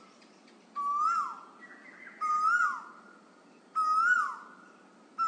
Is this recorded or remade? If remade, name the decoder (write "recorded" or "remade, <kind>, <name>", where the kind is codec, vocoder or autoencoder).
recorded